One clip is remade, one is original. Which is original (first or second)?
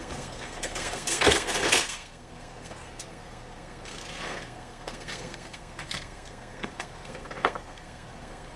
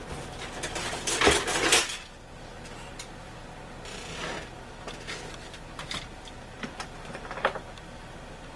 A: second